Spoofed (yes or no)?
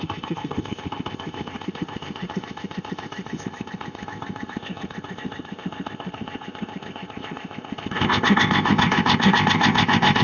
yes